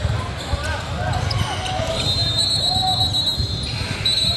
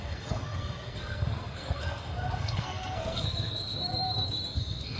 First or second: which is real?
first